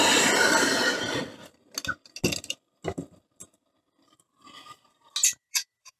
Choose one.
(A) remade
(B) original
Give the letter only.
B